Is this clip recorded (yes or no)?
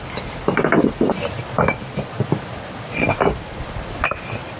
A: yes